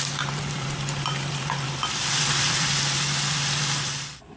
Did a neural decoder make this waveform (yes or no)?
yes